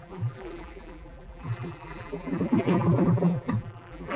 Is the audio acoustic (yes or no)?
no